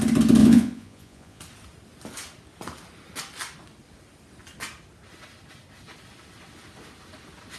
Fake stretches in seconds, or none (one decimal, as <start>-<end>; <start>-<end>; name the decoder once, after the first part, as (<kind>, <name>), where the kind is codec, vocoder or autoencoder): 0.4-1.4 (vocoder, Vocos)